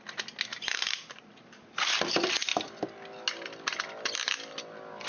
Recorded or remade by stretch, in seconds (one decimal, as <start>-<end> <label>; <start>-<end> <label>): 0.0-0.5 recorded; 0.5-1.2 remade; 1.2-5.1 recorded

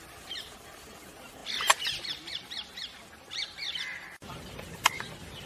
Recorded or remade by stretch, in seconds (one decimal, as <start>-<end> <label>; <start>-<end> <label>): 0.0-5.5 recorded

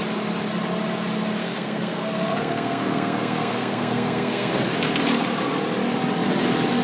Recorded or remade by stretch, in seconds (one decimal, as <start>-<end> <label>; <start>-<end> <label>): 0.0-1.4 recorded; 1.4-4.5 remade; 4.5-6.8 recorded

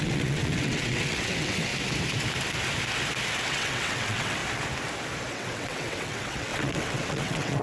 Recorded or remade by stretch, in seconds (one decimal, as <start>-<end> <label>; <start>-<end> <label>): 0.0-1.7 remade; 1.7-3.4 recorded; 3.4-4.4 remade; 4.4-5.3 recorded; 5.3-7.6 remade

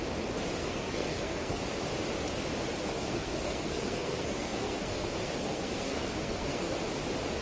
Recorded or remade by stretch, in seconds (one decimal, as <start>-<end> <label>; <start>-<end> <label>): 0.0-0.6 recorded; 0.6-1.6 remade; 1.6-2.8 recorded; 2.8-6.7 remade; 6.7-7.4 recorded

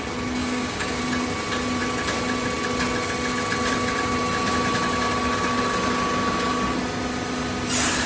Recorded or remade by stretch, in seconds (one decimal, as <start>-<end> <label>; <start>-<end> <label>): 0.0-0.4 recorded; 0.4-1.0 remade; 1.0-8.1 recorded